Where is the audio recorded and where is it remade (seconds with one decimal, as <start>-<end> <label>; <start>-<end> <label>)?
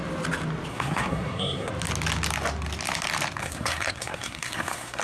0.0-0.7 recorded; 0.7-1.7 remade; 1.7-3.4 recorded; 3.4-5.0 remade